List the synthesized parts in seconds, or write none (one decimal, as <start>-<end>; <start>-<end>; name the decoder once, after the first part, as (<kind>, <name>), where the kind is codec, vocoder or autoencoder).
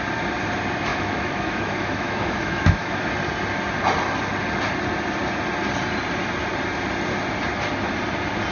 0.9-3.1 (autoencoder, DAC-VAE)